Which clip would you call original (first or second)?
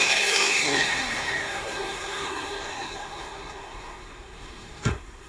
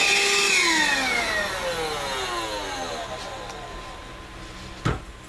second